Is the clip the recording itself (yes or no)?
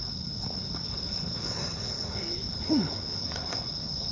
no